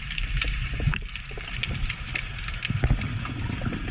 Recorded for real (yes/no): yes